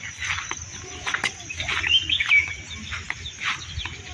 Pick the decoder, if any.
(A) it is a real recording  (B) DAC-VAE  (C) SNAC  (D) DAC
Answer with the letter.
A